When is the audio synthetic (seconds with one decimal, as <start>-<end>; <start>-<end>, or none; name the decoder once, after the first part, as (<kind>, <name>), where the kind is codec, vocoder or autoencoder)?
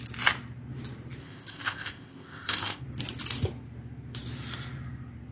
1.2-2.8 (codec, ZipCodec)